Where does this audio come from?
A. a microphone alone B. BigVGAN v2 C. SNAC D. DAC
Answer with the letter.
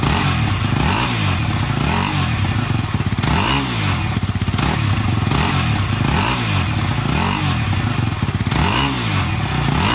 A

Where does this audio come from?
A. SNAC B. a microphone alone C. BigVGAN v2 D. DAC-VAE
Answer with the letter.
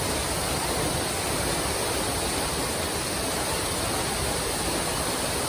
B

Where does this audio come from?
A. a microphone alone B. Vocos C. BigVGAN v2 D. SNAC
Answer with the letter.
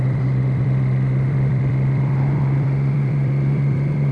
C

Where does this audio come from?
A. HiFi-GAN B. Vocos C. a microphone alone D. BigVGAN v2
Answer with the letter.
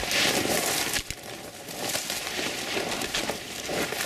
C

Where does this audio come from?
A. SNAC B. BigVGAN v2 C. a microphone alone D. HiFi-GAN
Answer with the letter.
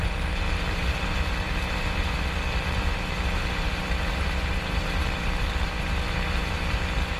B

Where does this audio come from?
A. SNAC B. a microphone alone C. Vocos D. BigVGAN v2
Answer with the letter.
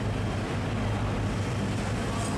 B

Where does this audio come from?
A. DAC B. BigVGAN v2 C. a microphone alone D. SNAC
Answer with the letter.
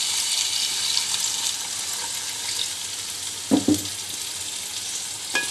C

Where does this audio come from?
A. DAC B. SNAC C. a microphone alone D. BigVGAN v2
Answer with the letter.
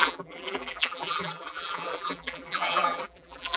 D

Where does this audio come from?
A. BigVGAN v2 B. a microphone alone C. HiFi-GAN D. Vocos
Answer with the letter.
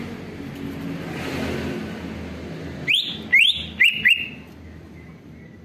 B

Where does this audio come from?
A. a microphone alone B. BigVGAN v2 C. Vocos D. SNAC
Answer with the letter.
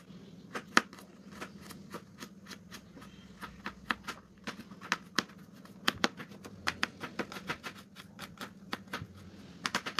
A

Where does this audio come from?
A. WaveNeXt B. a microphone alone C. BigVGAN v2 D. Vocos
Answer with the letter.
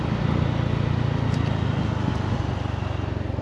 B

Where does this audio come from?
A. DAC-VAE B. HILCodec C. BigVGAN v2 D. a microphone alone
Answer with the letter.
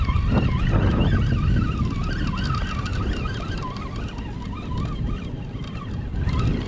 D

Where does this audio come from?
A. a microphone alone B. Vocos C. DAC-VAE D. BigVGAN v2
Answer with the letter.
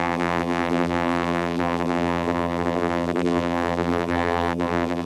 D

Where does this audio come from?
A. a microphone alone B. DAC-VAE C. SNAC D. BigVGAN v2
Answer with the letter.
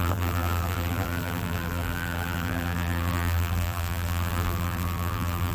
D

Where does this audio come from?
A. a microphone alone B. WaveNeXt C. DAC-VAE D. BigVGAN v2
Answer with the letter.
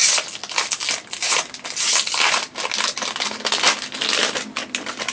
A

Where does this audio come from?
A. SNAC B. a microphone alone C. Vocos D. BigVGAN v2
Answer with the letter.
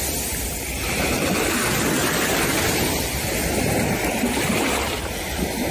B